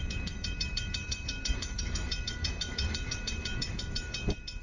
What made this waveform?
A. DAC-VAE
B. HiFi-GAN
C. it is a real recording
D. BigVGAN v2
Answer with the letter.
A